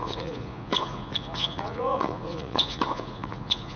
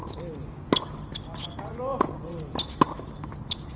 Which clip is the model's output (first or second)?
first